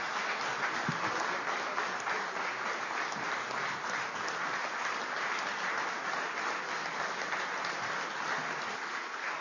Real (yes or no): yes